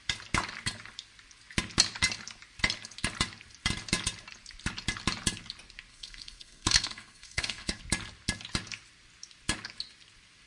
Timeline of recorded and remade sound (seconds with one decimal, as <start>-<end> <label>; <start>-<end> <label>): 0.0-5.9 recorded; 5.9-7.8 remade; 7.8-10.5 recorded